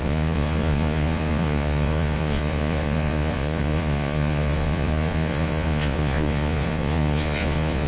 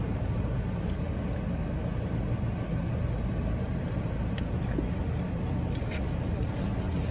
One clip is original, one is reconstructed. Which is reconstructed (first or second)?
first